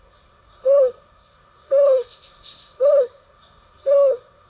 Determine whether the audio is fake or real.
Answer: fake